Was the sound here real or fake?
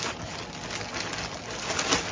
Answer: real